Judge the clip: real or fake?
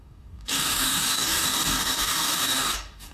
fake